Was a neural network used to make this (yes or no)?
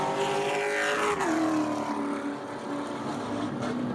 no